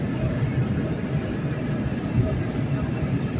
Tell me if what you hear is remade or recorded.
recorded